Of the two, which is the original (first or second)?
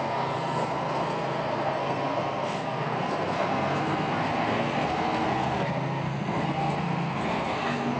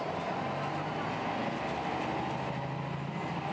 second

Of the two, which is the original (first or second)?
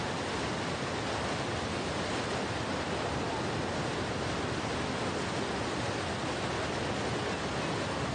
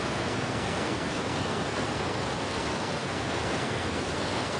first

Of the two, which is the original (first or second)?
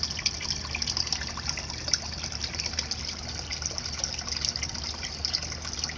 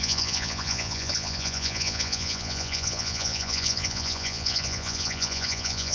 first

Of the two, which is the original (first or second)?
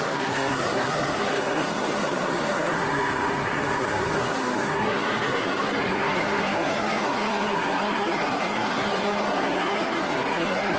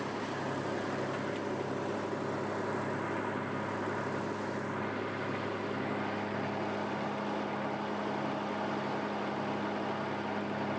second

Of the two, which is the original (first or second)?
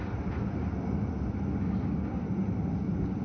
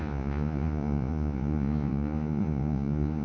first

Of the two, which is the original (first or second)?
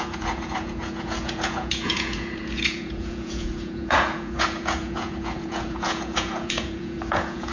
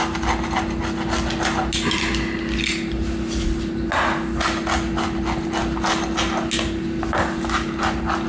second